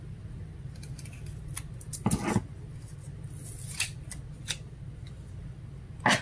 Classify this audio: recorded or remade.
recorded